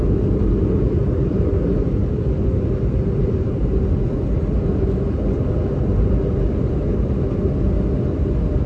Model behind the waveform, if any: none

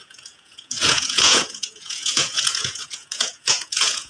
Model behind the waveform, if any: vocoder, Vocos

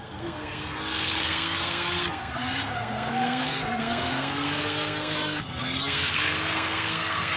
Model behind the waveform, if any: codec, SNAC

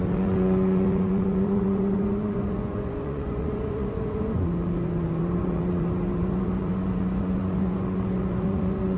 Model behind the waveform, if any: vocoder, Vocos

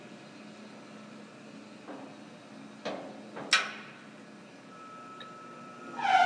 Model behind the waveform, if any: none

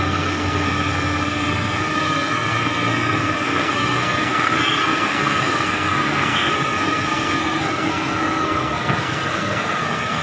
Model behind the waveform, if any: codec, SNAC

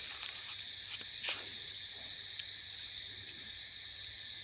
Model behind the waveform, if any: none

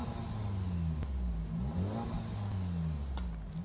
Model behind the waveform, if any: none